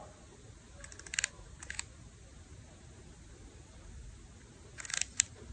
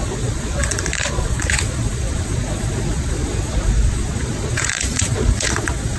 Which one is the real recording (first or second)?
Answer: first